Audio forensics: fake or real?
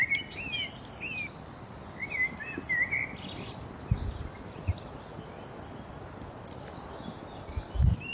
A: real